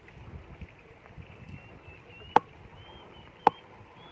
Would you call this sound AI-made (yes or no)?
no